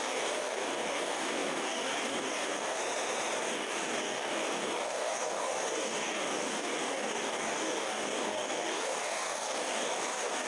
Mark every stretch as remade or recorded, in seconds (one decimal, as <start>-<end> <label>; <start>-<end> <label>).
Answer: 0.0-2.8 remade; 2.8-3.4 recorded; 3.4-10.5 remade